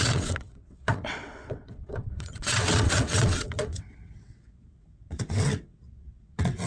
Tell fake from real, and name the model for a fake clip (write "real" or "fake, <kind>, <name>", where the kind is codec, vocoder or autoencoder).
fake, vocoder, WaveNeXt